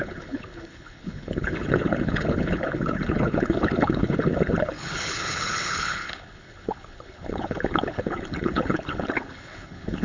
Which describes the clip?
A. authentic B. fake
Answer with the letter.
B